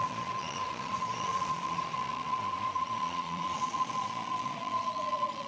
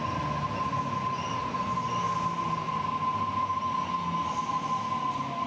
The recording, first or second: second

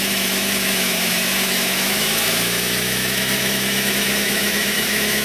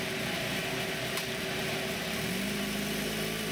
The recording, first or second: second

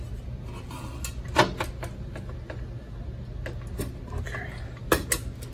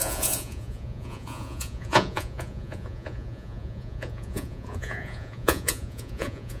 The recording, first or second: first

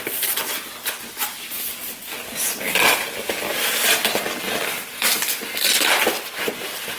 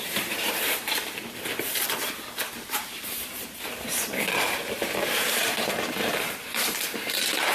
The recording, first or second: first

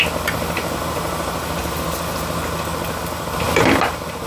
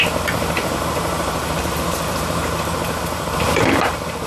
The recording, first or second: first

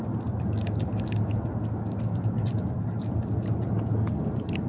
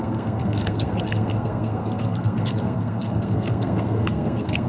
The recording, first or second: first